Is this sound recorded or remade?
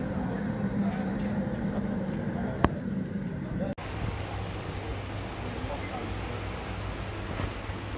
recorded